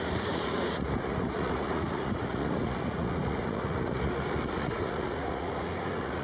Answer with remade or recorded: remade